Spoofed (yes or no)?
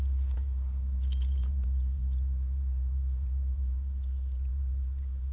yes